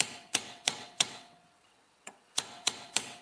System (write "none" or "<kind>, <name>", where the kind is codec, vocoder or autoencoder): vocoder, WaveNeXt